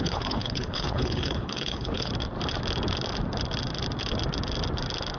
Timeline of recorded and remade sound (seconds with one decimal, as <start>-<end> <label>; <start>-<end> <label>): 0.0-2.1 remade; 2.1-5.2 recorded

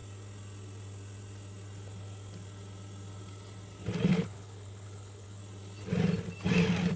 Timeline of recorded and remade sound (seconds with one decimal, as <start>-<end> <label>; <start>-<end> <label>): 0.0-4.1 recorded; 4.1-5.4 remade; 5.4-7.0 recorded

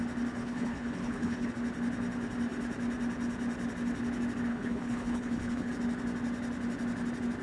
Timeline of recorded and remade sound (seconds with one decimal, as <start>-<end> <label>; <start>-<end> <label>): 0.0-0.4 recorded; 0.4-1.5 remade; 1.5-4.5 recorded; 4.5-5.7 remade; 5.7-7.4 recorded